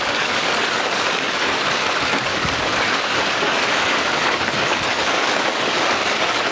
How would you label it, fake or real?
fake